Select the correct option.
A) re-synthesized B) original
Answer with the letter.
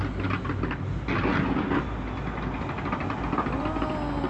B